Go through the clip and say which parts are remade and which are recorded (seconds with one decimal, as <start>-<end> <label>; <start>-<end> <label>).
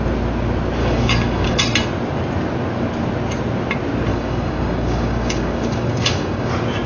0.0-0.8 recorded; 0.8-1.6 remade; 1.6-4.1 recorded; 4.1-6.5 remade; 6.5-6.9 recorded